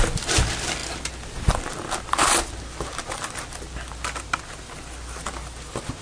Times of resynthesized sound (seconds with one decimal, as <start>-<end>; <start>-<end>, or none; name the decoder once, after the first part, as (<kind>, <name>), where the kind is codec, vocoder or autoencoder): none